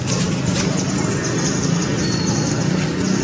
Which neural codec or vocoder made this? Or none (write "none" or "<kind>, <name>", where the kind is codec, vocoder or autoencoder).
none